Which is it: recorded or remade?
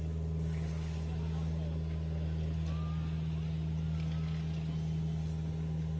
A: recorded